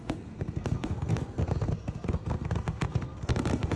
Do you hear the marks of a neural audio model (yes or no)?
yes